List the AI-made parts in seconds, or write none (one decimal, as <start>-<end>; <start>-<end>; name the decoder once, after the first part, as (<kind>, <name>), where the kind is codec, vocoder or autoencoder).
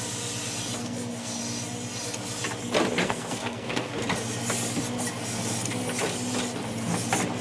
0.8-1.4 (codec, SNAC); 3.0-3.9